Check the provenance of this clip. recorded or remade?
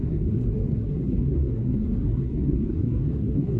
remade